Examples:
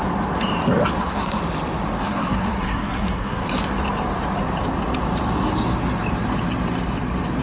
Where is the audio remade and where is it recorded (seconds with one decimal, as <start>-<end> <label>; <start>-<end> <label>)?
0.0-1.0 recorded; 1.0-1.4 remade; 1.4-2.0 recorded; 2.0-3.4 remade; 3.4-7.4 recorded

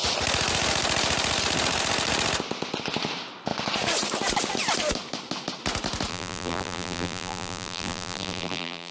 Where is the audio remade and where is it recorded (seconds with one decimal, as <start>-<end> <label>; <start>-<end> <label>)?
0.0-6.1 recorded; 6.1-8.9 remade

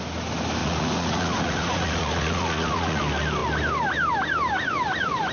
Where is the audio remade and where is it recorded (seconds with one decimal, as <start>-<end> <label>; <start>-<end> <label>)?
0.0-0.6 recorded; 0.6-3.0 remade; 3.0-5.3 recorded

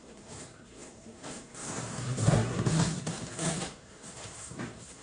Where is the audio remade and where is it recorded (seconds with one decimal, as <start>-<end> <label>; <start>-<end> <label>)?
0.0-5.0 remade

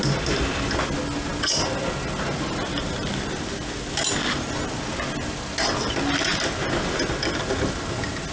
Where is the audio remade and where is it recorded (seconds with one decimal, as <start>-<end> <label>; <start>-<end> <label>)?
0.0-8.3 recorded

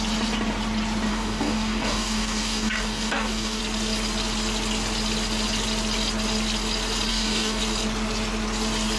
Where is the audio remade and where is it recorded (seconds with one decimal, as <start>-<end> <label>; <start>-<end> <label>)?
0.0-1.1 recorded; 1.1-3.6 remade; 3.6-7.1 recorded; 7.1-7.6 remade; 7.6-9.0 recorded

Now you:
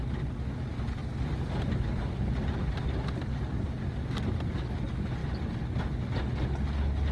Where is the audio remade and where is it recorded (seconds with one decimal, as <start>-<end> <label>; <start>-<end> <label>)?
0.0-7.1 recorded